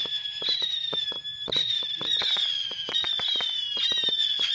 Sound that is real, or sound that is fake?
real